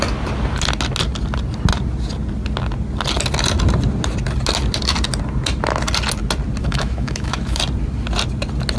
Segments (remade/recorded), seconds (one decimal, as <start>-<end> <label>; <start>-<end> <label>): 0.0-6.6 recorded; 6.6-7.6 remade; 7.6-8.8 recorded

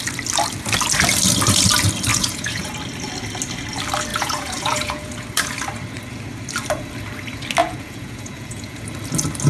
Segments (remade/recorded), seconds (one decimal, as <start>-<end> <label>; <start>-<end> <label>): 0.0-2.1 recorded; 2.1-2.7 remade; 2.7-4.1 recorded; 4.1-5.2 remade; 5.2-7.6 recorded; 7.6-8.8 remade; 8.8-9.5 recorded

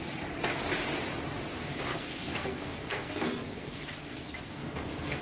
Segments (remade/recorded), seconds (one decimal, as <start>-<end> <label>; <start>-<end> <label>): 0.0-1.9 recorded; 1.9-5.2 remade

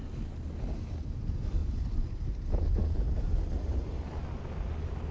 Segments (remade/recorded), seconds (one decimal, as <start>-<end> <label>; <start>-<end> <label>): 0.0-5.1 recorded

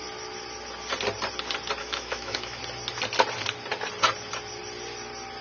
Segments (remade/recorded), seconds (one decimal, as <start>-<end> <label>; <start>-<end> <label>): 0.0-1.8 recorded; 1.8-2.6 remade; 2.6-5.4 recorded

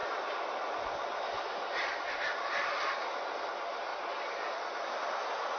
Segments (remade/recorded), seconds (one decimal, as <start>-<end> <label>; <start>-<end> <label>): 0.0-5.6 recorded